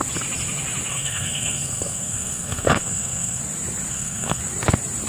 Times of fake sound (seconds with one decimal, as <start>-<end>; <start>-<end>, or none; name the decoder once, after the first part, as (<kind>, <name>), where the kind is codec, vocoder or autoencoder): 0.9-3.4 (codec, SNAC); 3.9-4.4